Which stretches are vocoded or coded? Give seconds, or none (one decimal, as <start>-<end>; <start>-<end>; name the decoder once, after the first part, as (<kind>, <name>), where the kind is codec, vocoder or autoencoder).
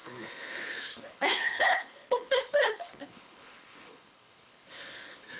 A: 0.0-5.4 (codec, HILCodec)